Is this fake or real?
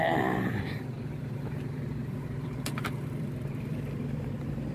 fake